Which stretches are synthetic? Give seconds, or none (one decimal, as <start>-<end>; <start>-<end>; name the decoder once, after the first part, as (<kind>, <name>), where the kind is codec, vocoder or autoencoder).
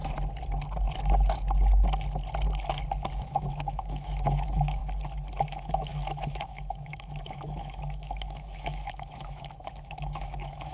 3.2-4.8 (autoencoder, DAC-VAE); 5.5-10.7